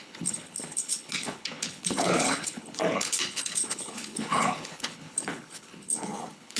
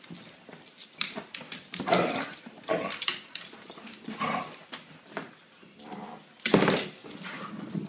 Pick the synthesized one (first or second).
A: first